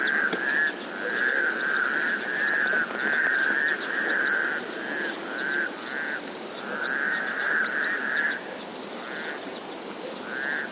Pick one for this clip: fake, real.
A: real